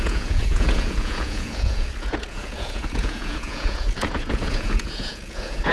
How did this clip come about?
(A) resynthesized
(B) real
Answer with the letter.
A